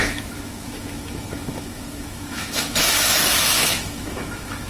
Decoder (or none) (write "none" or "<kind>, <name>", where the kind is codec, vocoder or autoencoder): autoencoder, DAC-VAE